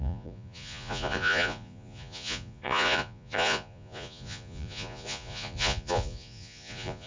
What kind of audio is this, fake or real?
fake